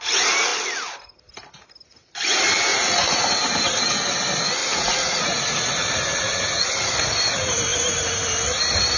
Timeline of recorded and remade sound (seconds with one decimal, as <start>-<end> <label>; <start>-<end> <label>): 0.0-2.7 recorded; 2.7-3.3 remade; 3.3-4.6 recorded; 4.6-6.9 remade; 6.9-9.0 recorded